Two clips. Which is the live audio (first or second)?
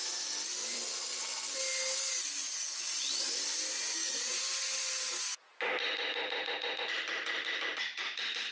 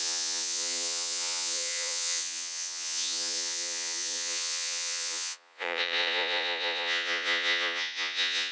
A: first